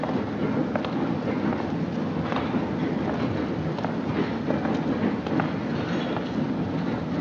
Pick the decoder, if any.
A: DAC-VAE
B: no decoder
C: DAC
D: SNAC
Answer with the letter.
B